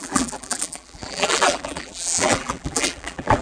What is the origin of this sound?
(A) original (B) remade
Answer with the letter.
B